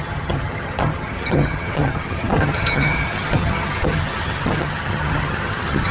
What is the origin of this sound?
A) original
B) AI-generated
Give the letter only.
B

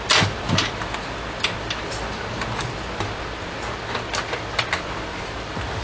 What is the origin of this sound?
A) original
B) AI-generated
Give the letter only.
A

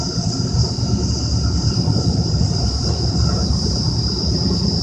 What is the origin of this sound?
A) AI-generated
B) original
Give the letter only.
A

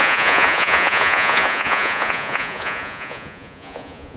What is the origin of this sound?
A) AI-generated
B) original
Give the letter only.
A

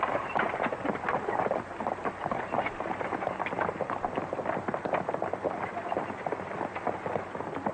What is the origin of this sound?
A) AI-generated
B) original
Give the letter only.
B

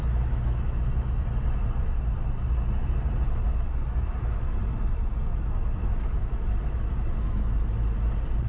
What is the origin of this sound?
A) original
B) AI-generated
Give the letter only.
A